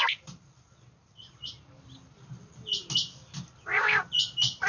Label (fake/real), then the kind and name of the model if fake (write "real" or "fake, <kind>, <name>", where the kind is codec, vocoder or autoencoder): real